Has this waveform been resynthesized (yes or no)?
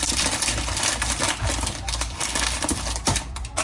yes